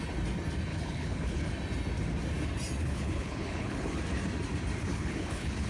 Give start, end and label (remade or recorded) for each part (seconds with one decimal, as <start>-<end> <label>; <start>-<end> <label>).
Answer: 0.0-0.7 recorded; 0.7-1.5 remade; 1.5-2.8 recorded; 2.8-4.0 remade; 4.0-4.9 recorded; 4.9-5.7 remade